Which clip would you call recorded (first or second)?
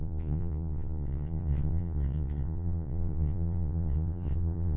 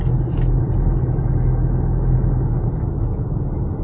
second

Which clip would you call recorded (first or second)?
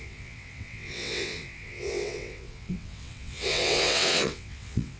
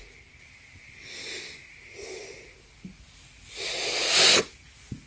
second